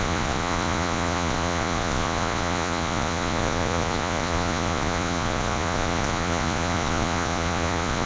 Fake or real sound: fake